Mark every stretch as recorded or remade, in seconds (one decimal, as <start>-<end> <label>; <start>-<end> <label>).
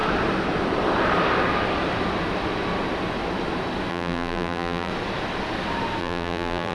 0.0-3.9 recorded; 3.9-4.9 remade; 4.9-6.0 recorded; 6.0-6.7 remade